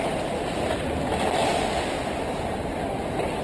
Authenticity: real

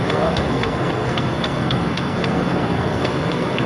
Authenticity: fake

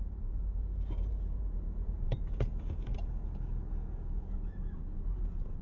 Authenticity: fake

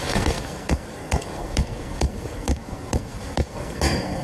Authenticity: fake